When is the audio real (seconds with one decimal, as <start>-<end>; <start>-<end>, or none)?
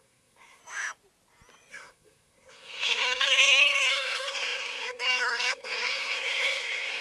0.6-1.7